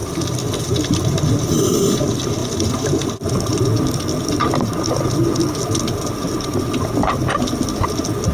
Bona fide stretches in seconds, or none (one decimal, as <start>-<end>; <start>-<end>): 0.0-8.3